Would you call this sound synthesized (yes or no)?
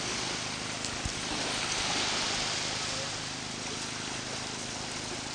no